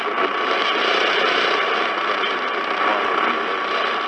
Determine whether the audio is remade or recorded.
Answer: recorded